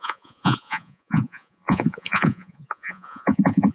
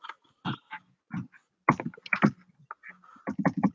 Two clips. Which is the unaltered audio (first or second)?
second